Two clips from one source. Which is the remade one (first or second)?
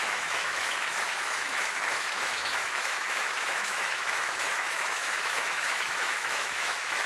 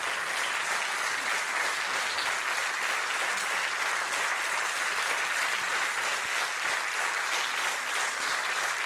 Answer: first